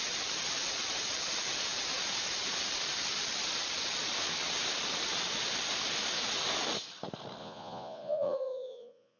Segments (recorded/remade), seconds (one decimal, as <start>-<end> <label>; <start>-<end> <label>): 0.0-7.4 recorded; 7.4-9.2 remade